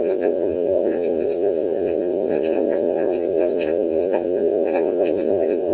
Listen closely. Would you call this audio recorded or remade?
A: remade